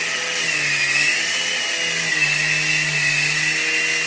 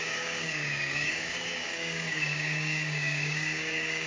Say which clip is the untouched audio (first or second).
first